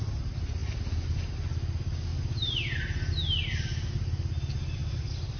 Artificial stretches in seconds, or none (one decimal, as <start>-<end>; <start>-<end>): none